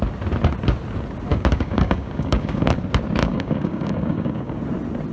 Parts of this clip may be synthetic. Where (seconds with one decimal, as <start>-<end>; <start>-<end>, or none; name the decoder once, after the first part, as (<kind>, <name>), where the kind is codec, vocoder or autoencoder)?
1.3-2.8 (codec, DAC); 3.2-4.6